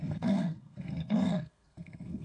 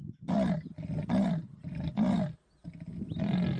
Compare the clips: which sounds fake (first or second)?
first